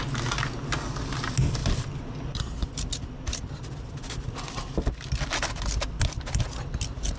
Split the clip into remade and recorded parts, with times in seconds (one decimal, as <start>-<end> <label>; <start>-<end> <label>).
0.0-7.2 recorded